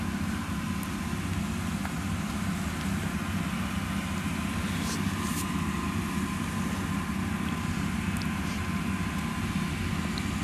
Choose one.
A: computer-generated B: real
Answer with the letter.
B